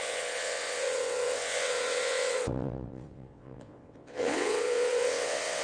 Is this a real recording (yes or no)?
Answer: no